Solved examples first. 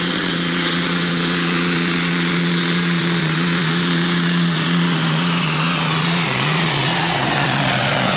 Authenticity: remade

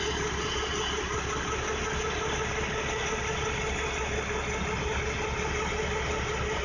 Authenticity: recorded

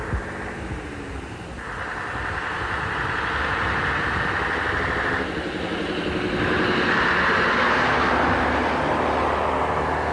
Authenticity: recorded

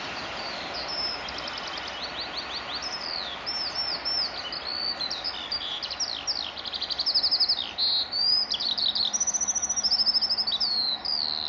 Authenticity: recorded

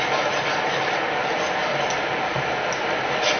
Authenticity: recorded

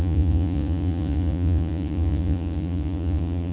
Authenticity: remade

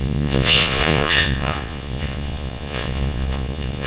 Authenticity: remade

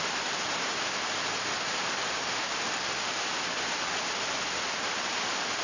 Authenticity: recorded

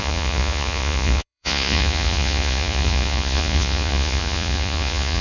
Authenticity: remade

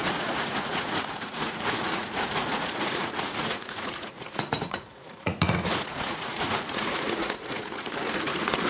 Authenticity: remade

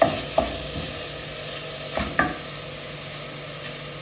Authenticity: recorded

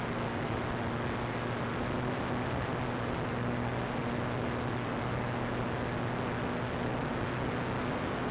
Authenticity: recorded